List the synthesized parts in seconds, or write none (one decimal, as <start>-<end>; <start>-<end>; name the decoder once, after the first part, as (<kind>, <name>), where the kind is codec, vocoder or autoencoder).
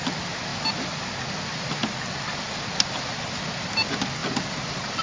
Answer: none